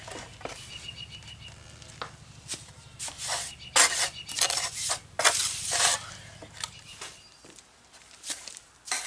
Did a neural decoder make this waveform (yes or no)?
no